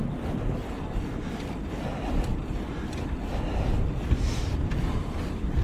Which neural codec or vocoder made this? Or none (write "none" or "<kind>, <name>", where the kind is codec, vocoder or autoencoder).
none